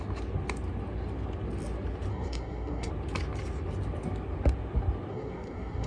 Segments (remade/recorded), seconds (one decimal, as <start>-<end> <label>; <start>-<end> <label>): 0.0-2.1 recorded; 2.1-2.9 remade; 2.9-5.1 recorded; 5.1-5.9 remade